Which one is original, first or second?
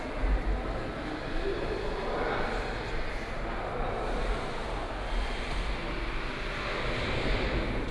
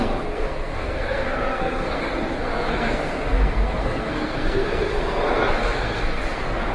first